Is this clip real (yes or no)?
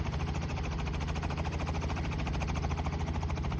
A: yes